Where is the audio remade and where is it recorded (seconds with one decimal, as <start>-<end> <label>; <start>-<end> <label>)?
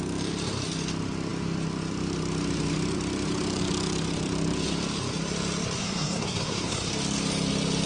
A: 0.0-5.8 recorded; 5.8-6.9 remade; 6.9-7.9 recorded